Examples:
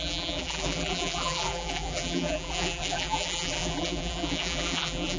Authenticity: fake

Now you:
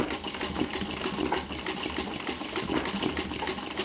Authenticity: real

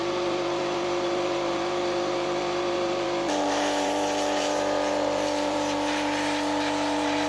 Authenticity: fake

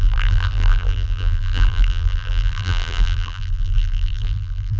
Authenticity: fake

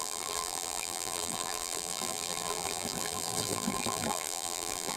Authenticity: fake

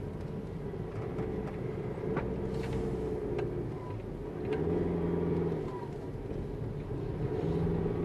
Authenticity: real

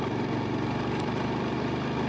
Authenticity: fake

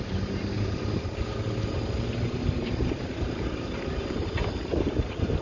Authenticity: fake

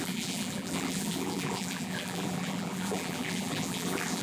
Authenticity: fake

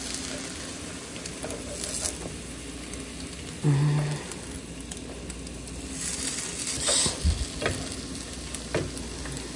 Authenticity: real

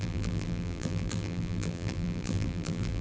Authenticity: fake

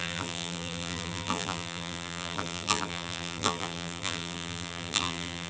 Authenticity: fake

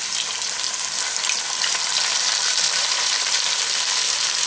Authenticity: fake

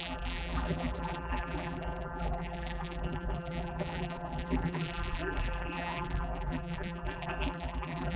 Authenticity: fake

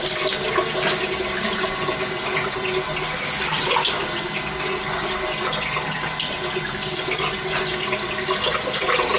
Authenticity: real